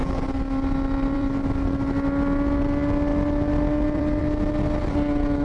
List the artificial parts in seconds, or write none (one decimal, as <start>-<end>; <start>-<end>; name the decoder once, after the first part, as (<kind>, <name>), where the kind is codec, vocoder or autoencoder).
0.0-2.6 (vocoder, BigVGAN v2); 3.1-4.2